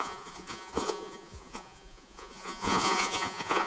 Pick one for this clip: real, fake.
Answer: fake